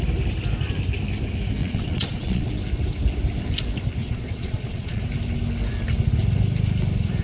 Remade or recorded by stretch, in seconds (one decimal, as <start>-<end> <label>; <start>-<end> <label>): 0.0-1.6 recorded; 1.6-2.5 remade; 2.5-4.0 recorded; 4.0-5.0 remade; 5.0-7.2 recorded